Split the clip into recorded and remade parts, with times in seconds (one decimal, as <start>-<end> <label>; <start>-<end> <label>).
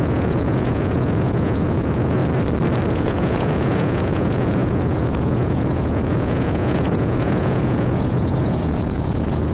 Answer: 0.0-2.2 remade; 2.2-2.9 recorded; 2.9-9.5 remade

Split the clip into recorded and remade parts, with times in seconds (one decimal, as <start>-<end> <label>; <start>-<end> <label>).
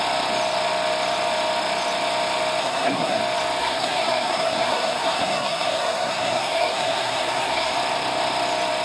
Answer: 0.0-2.6 recorded; 2.6-3.2 remade; 3.2-3.6 recorded; 3.6-7.7 remade; 7.7-8.8 recorded